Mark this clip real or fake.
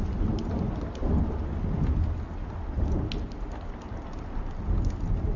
real